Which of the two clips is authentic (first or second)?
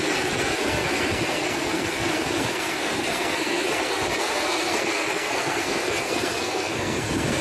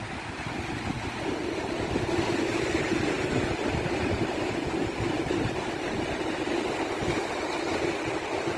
second